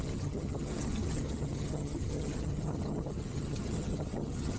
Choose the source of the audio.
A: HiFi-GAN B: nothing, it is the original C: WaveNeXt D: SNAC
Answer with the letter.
A